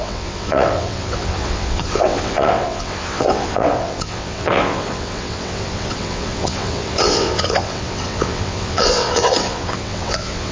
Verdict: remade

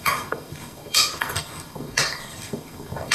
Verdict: remade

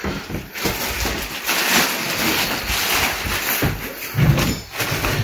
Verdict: recorded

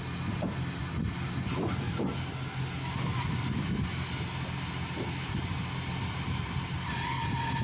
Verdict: recorded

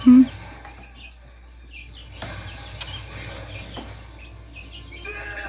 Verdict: recorded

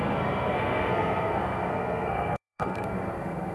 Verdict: remade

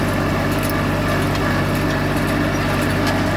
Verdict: recorded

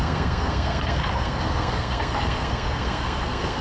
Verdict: remade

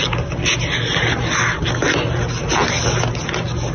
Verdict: recorded